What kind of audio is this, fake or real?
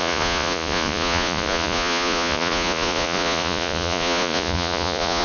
fake